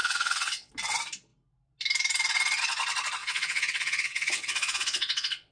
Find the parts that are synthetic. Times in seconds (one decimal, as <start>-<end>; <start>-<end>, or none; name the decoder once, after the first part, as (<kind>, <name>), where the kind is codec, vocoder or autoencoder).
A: 0.0-0.7 (vocoder, WaveNeXt); 3.2-5.5